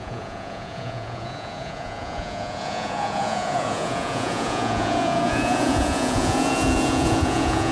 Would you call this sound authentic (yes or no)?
no